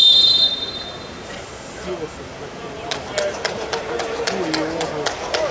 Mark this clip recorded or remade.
recorded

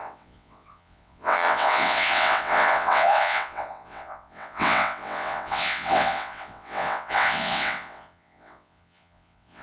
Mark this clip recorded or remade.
remade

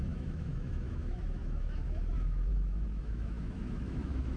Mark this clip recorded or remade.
remade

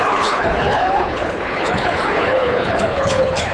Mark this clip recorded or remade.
remade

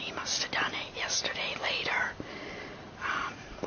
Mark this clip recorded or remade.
recorded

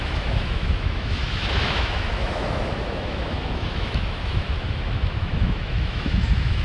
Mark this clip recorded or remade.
remade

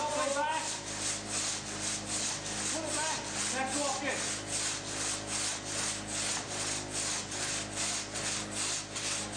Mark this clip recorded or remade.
recorded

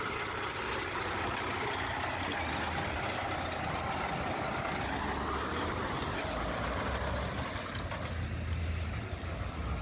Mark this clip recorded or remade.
recorded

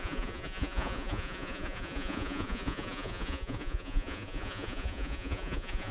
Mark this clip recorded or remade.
remade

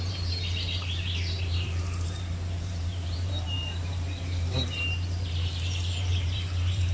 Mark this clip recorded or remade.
remade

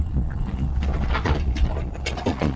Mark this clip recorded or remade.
remade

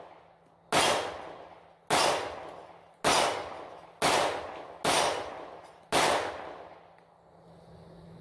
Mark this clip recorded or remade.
recorded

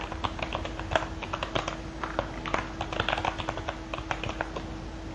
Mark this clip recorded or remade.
recorded